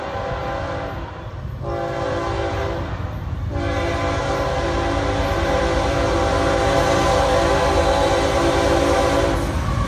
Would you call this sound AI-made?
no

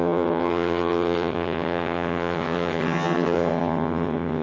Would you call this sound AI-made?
yes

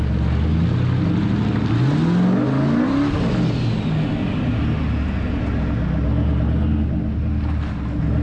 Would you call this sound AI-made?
no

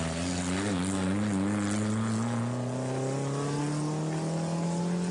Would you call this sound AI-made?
no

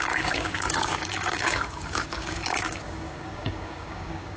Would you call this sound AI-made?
yes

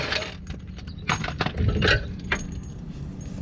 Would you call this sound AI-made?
no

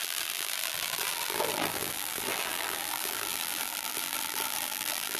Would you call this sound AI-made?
yes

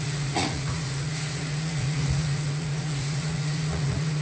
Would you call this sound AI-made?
yes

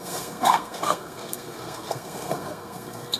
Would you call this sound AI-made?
yes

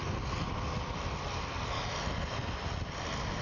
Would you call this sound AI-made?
no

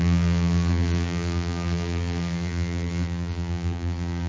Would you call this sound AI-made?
yes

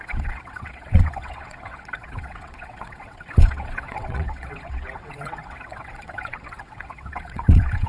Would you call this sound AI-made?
yes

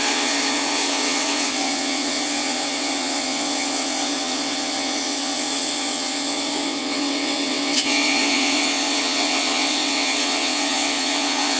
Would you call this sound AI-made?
yes